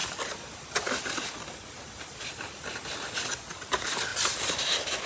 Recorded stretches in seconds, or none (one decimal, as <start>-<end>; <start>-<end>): 0.0-5.1